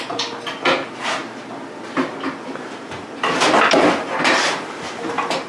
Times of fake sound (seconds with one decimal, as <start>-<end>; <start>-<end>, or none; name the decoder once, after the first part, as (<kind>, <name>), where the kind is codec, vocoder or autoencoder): none